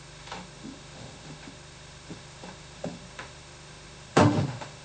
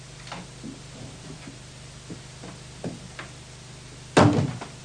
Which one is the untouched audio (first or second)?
second